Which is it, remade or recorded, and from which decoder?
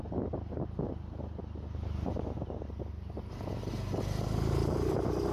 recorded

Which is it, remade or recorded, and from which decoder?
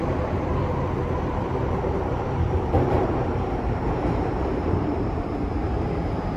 remade, vocoder, BigVGAN v2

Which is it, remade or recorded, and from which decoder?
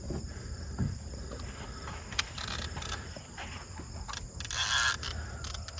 recorded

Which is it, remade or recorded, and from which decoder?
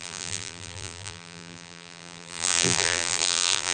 remade, vocoder, BigVGAN v2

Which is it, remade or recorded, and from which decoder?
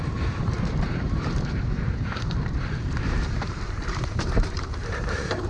remade, vocoder, BigVGAN v2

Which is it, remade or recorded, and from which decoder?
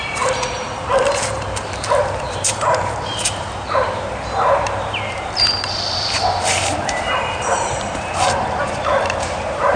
remade, vocoder, BigVGAN v2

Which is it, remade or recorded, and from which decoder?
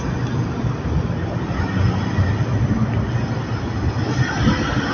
recorded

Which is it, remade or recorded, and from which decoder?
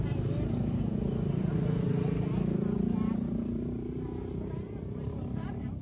remade, vocoder, BigVGAN v2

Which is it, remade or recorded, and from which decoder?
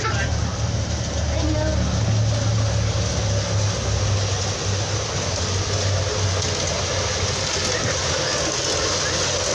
recorded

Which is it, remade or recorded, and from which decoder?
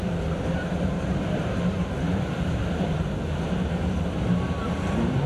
recorded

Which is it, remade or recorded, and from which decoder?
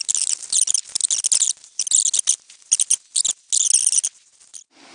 recorded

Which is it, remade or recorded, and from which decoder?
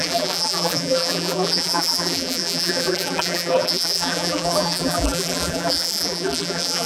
remade, vocoder, BigVGAN v2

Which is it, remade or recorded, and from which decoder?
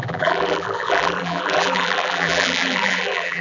remade, vocoder, BigVGAN v2